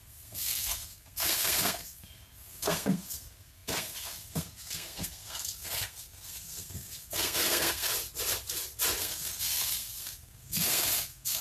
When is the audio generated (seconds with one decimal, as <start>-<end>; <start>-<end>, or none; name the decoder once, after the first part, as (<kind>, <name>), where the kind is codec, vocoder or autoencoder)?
0.0-7.9 (codec, SNAC); 9.0-11.4